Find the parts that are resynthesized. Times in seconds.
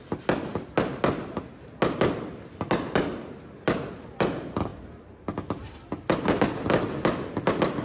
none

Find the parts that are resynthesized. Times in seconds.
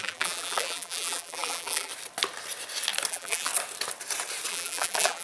0.0-1.9; 3.1-3.5; 4.5-5.2